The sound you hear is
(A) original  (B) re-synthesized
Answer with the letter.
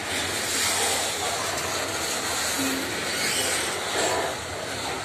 A